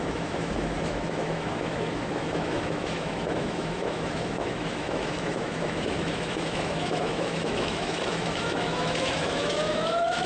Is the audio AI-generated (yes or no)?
yes